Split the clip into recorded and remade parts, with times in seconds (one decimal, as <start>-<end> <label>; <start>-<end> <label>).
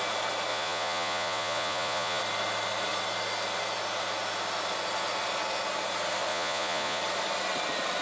0.0-0.5 recorded; 0.5-2.2 remade; 2.2-6.3 recorded; 6.3-7.0 remade; 7.0-8.0 recorded